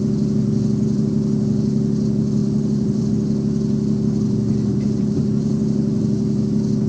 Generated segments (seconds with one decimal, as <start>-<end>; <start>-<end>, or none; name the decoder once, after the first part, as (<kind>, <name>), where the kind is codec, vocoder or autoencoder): 2.4-3.1 (vocoder, BigVGAN v2); 4.7-5.6

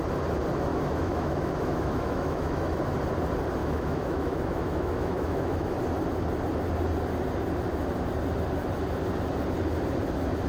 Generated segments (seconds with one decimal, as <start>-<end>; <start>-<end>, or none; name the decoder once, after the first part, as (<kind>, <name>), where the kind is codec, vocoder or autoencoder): 0.7-2.8 (autoencoder, DAC-VAE); 3.6-5.7

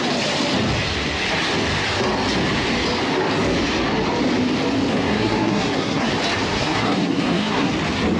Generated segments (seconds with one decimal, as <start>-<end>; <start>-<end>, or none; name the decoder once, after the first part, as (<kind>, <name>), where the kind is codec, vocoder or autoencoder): 4.9-6.1 (codec, SNAC); 6.5-7.7

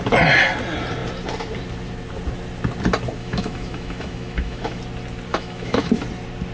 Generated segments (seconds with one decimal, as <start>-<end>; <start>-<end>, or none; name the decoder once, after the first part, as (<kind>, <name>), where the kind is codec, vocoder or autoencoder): 3.2-4.8 (autoencoder, DAC-VAE); 5.3-5.9

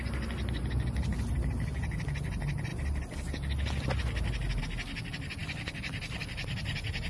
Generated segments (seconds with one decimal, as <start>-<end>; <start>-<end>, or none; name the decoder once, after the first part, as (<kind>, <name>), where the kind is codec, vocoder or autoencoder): none